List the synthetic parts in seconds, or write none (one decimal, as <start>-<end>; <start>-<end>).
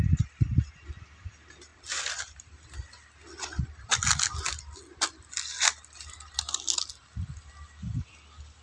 none